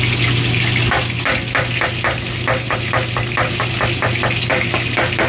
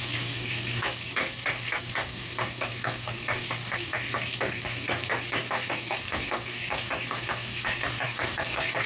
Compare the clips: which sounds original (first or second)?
first